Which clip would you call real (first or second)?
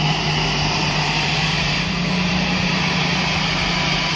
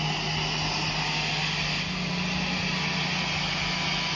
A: second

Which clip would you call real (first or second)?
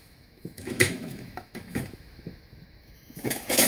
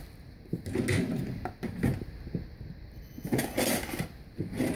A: second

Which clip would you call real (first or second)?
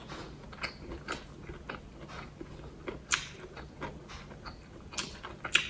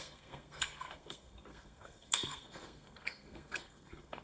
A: first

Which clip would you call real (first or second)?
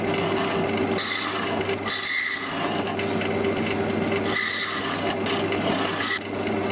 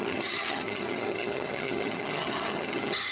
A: first